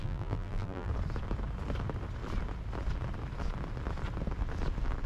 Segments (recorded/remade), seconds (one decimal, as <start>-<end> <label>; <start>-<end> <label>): 0.0-0.9 remade; 0.9-5.1 recorded